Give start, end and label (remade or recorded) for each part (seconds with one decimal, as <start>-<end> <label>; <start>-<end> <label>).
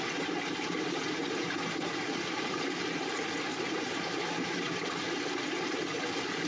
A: 0.0-6.5 recorded